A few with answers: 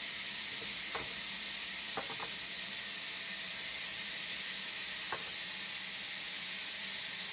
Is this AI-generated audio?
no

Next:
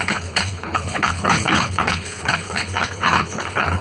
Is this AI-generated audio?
yes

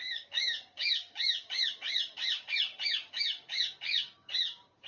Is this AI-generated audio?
yes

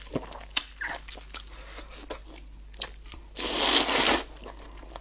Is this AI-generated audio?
no